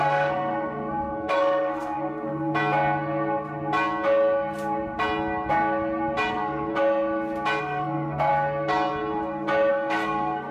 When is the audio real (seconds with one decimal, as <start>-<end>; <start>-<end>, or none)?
2.5-6.3; 6.7-7.6; 8.3-9.7